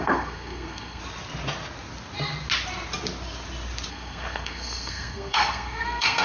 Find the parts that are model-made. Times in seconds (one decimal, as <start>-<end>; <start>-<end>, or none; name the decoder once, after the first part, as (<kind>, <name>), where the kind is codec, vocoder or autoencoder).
0.0-1.0 (codec, SNAC); 3.9-6.2